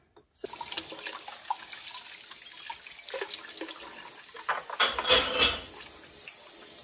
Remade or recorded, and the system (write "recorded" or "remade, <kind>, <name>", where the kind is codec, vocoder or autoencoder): recorded